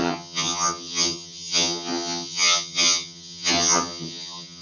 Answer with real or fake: fake